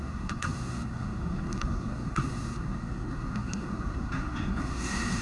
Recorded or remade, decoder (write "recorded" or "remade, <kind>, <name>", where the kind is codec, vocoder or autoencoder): remade, codec, SNAC